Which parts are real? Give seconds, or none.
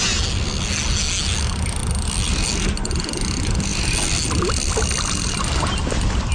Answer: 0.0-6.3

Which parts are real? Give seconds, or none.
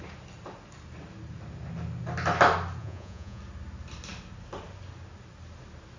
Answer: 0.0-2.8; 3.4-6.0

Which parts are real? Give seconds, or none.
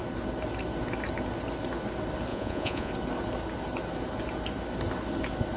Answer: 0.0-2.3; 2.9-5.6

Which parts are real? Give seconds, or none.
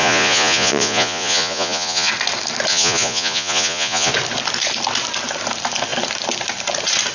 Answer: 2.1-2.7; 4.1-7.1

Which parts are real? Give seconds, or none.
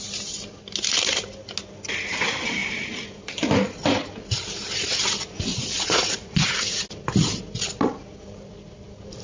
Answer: 0.0-5.5; 6.5-9.2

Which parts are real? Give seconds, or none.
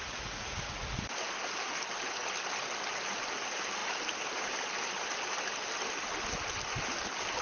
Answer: 1.0-7.4